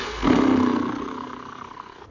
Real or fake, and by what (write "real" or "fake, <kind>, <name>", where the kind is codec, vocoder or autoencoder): fake, codec, SNAC